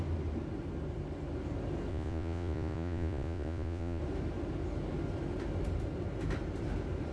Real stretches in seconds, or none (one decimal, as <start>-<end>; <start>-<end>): 0.0-1.9; 4.0-7.1